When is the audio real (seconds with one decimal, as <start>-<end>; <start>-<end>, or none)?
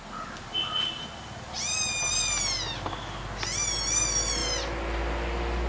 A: 0.0-5.7